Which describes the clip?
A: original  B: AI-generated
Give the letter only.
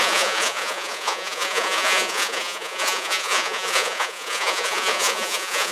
B